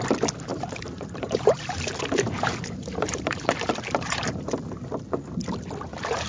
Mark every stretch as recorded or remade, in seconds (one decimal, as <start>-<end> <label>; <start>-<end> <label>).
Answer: 0.0-0.5 recorded; 0.5-4.3 remade; 4.3-6.3 recorded